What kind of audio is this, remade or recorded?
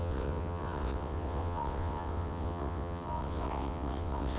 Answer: remade